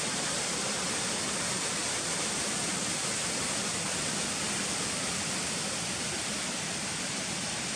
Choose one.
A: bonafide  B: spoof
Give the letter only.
B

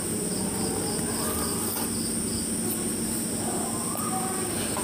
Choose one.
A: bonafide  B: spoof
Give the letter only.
A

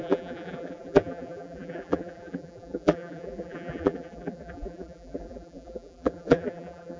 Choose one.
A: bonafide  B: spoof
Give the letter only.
B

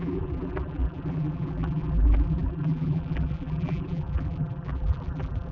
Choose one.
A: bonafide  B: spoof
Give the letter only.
B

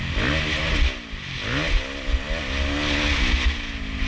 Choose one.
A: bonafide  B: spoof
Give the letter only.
A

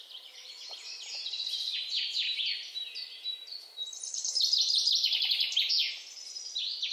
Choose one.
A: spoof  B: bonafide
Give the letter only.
A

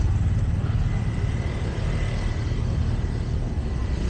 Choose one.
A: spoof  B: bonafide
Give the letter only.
B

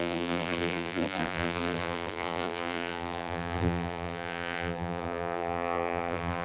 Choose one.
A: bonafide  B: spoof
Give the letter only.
B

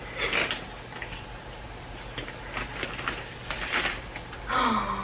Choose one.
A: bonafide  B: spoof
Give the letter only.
A